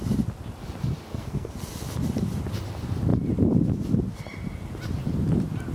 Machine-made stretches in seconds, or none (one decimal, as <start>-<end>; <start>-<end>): 1.1-1.7